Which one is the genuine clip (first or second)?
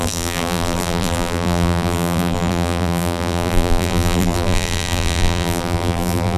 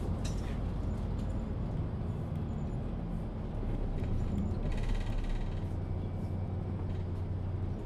second